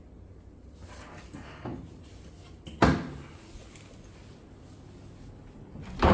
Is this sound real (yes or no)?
yes